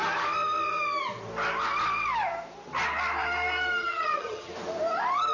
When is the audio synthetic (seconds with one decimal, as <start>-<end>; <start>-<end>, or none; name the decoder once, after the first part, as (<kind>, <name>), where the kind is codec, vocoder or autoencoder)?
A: 3.8-4.5 (vocoder, HiFi-GAN)